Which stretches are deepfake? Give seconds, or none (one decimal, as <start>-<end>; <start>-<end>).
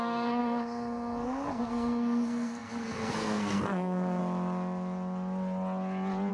0.0-4.2